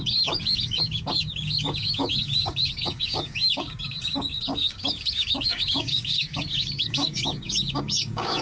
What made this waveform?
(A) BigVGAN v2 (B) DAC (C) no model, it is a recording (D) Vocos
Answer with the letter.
B